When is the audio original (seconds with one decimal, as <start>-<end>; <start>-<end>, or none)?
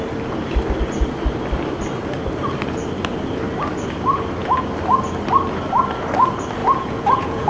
0.0-6.6